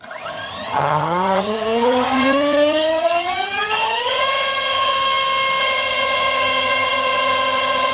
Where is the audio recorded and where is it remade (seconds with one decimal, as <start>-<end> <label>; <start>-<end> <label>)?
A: 0.0-4.9 remade; 4.9-5.6 recorded; 5.6-7.9 remade

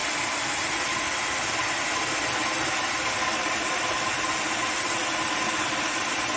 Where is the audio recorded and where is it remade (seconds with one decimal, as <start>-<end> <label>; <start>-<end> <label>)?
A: 0.0-6.4 recorded

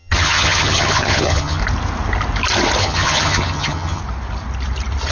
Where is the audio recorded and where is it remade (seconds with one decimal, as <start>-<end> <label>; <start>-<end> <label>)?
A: 0.0-1.6 remade; 1.6-2.8 recorded; 2.8-4.0 remade; 4.0-5.1 recorded

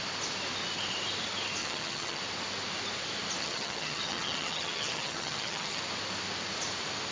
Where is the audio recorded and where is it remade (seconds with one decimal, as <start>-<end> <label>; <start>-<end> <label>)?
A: 0.0-1.6 recorded; 1.6-2.2 remade; 2.2-3.4 recorded; 3.4-5.8 remade; 5.8-7.1 recorded